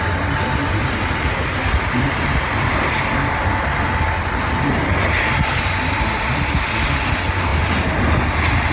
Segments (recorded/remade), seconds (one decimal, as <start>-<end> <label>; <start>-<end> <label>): 0.0-8.7 recorded